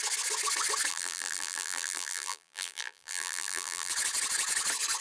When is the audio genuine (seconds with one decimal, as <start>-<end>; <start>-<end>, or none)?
0.0-0.9; 3.9-5.0